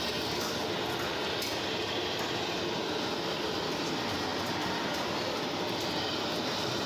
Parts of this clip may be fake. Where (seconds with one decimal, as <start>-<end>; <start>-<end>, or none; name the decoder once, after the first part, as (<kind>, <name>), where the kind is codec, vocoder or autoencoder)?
none